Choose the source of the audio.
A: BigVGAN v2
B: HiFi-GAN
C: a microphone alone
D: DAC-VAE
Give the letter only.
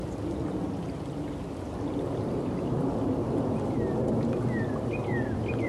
C